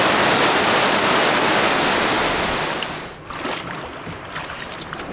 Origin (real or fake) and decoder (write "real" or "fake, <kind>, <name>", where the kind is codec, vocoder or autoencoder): real